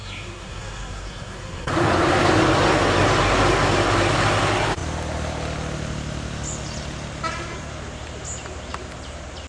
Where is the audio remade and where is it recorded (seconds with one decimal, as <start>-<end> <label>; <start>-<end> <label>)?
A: 0.0-1.7 remade; 1.7-9.5 recorded